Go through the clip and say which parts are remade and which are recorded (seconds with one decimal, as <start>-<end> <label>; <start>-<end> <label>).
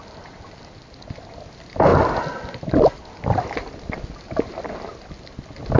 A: 0.0-5.8 recorded